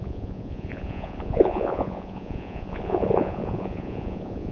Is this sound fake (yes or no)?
yes